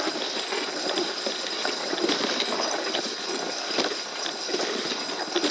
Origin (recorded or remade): recorded